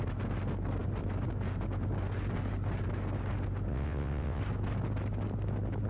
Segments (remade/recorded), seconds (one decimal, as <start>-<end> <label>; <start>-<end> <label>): 0.0-3.7 recorded; 3.7-4.4 remade; 4.4-5.9 recorded